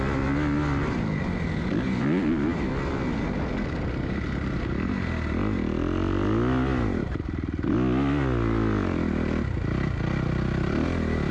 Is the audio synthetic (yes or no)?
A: no